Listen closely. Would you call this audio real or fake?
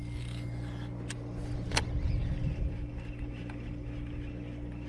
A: real